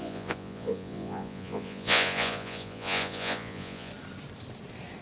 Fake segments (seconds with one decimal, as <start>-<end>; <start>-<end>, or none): 0.0-3.9